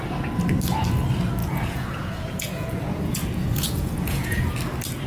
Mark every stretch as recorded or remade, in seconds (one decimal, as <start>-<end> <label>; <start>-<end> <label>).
0.0-1.4 recorded; 1.4-4.5 remade; 4.5-5.1 recorded